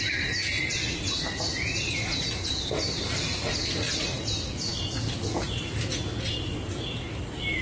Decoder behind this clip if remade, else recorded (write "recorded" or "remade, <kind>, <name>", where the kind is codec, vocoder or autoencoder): recorded